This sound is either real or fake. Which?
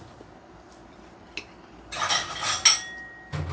real